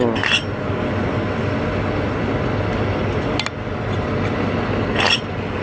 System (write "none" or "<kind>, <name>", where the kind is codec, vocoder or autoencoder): none